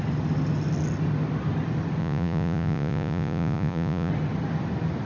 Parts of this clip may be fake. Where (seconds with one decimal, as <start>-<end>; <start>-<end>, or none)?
2.0-4.1